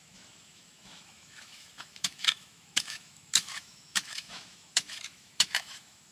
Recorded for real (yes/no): no